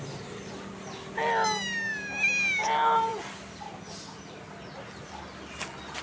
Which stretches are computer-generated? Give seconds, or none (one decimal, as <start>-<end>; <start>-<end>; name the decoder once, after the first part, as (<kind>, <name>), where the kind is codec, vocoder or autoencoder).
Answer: none